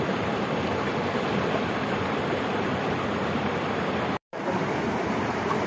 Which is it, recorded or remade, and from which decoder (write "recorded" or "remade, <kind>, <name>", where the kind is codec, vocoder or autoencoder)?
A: remade, vocoder, BigVGAN v2